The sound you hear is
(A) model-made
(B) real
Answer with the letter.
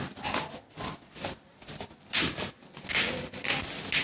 B